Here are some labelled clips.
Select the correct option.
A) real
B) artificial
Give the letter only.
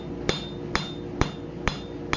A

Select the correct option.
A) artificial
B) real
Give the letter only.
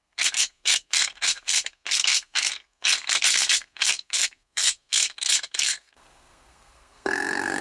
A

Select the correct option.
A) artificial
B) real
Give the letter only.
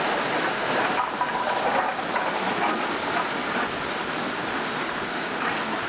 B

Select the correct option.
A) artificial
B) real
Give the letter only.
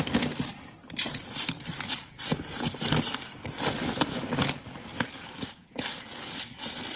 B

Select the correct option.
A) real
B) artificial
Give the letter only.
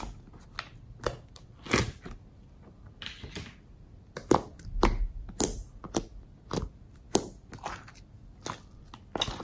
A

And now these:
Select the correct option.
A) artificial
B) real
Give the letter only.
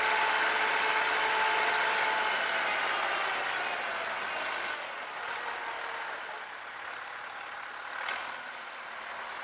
B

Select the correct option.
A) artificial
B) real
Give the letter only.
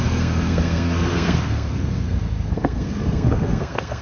A